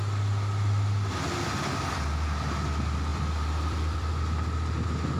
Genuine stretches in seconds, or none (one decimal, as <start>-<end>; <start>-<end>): 0.0-3.1; 4.1-5.2